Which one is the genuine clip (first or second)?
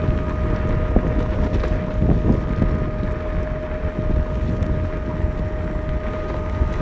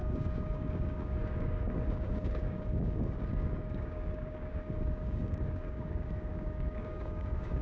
first